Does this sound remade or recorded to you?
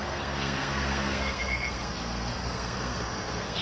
remade